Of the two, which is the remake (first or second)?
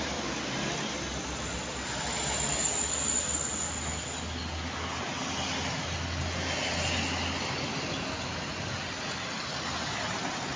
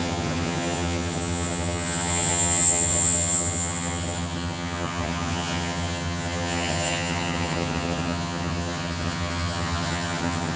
second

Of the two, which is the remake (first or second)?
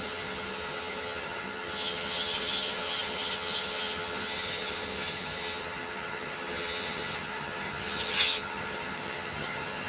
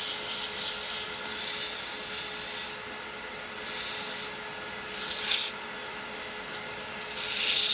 first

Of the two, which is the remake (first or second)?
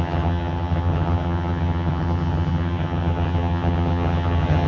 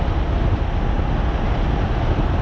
first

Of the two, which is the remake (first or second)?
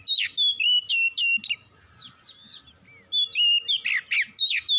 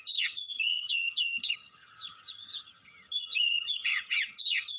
second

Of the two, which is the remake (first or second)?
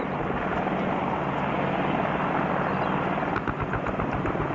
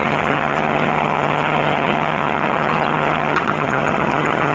second